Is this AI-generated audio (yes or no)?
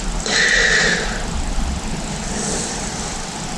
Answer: no